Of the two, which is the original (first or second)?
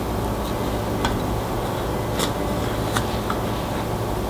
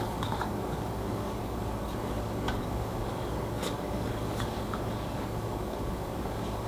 first